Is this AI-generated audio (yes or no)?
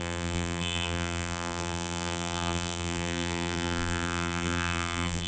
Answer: yes